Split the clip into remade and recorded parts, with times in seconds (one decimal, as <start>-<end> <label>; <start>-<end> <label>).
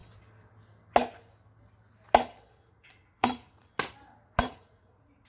0.0-2.5 recorded; 2.5-3.7 remade; 3.7-4.4 recorded; 4.4-5.3 remade